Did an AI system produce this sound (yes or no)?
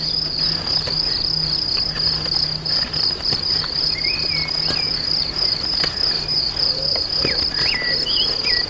no